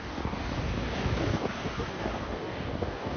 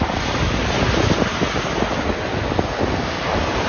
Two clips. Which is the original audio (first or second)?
second